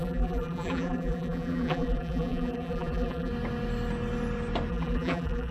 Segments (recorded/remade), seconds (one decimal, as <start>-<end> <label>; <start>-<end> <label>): 0.0-3.3 remade; 3.3-4.7 recorded; 4.7-5.5 remade